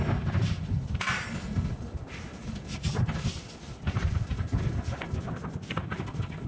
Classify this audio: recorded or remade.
recorded